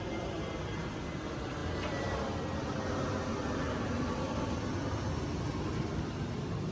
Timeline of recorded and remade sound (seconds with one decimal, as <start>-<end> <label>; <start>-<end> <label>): 0.0-6.7 recorded